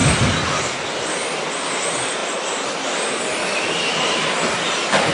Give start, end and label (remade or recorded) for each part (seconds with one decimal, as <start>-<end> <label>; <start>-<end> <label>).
0.0-5.1 recorded